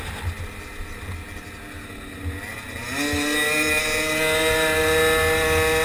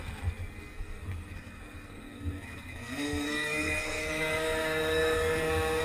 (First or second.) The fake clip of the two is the second